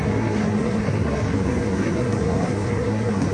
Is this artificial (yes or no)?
yes